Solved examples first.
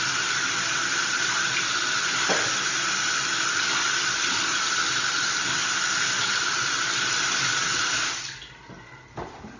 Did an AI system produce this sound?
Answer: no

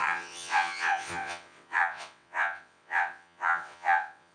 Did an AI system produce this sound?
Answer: yes